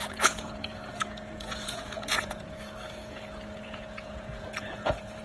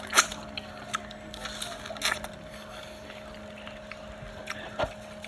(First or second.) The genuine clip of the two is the second